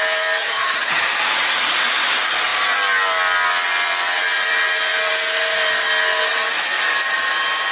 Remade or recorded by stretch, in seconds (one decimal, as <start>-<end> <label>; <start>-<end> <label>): 0.0-0.4 recorded; 0.4-1.0 remade; 1.0-7.7 recorded